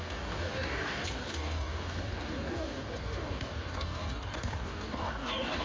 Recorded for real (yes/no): no